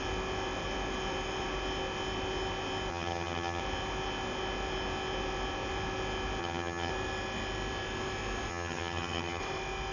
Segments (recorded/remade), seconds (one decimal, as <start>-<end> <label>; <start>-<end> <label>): 0.0-2.9 recorded; 2.9-3.6 remade; 3.6-6.4 recorded; 6.4-6.9 remade; 6.9-8.5 recorded; 8.5-9.4 remade; 9.4-9.9 recorded